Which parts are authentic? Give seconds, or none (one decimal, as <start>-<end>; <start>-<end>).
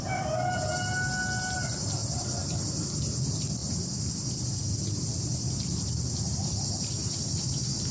0.0-2.0; 2.6-3.6; 4.1-7.9